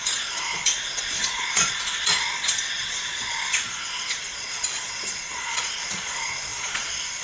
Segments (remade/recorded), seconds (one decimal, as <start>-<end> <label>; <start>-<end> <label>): 0.0-7.2 remade